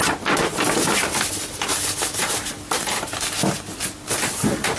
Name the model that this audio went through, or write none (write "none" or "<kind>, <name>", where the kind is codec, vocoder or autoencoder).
none